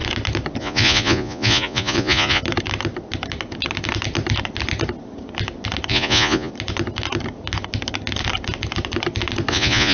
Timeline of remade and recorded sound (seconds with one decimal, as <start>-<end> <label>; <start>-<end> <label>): 0.0-0.6 recorded; 0.6-2.4 remade; 2.4-5.9 recorded; 5.9-6.5 remade; 6.5-9.5 recorded; 9.5-9.9 remade